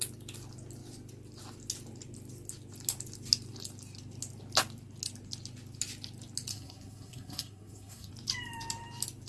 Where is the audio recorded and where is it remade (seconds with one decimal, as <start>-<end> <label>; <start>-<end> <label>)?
0.0-6.5 recorded; 6.5-8.1 remade; 8.1-9.3 recorded